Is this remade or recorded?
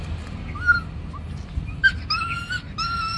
recorded